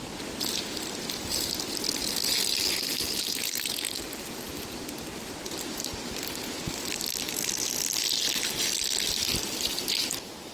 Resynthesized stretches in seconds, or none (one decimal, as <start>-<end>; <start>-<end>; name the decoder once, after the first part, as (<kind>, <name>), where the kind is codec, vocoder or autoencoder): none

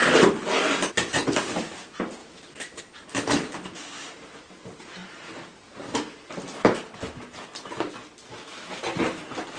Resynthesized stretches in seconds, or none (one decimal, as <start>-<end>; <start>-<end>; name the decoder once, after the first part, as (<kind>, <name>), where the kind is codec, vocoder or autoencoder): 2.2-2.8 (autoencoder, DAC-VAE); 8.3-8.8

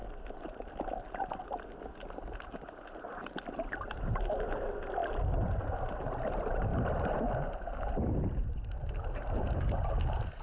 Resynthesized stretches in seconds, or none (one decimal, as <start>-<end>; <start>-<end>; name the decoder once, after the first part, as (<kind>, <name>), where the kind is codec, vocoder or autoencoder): none

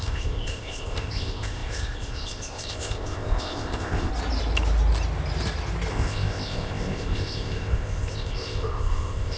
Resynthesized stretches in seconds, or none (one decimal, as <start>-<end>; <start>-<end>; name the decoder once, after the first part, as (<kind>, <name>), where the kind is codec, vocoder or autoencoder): 0.0-4.1 (codec, ZipCodec); 5.9-9.4

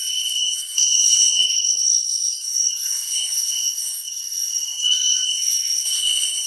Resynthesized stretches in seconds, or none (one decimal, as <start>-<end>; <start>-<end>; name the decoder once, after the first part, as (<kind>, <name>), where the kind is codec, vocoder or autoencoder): 0.0-6.5 (codec, SNAC)

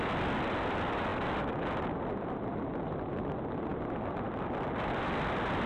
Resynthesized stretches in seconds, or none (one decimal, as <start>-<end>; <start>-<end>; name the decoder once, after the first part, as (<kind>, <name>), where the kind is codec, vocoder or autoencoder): none